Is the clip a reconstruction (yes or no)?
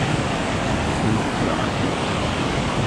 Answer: yes